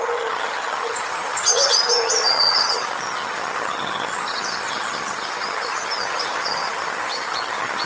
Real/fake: fake